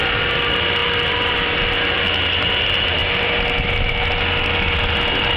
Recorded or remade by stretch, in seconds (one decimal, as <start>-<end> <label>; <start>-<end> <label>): 0.0-5.4 recorded